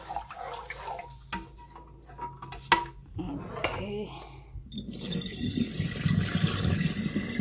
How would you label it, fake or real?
real